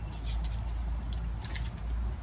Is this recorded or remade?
recorded